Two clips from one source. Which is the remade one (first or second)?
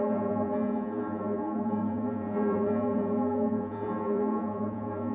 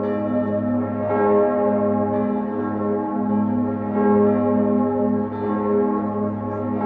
first